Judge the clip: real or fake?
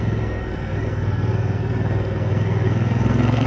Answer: fake